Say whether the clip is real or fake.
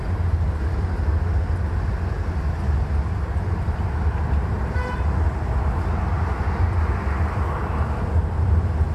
real